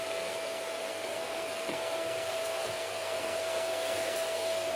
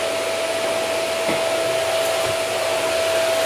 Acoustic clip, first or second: second